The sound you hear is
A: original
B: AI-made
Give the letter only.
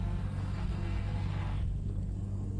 B